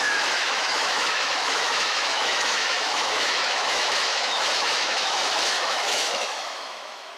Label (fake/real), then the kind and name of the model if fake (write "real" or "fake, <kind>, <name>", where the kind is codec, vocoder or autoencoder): fake, autoencoder, DAC-VAE